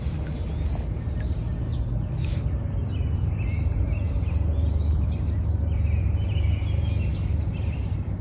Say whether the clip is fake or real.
real